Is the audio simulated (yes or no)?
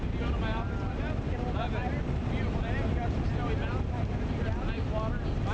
no